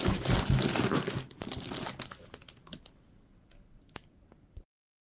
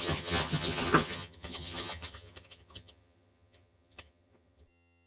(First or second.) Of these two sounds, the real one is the first